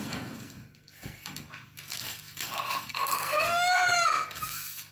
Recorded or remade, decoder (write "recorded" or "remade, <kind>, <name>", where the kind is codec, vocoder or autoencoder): remade, codec, SNAC